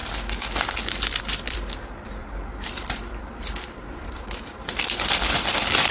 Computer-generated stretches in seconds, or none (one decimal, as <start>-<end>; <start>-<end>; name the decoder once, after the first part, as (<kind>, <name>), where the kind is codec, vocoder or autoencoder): 0.0-5.9 (vocoder, BigVGAN v2)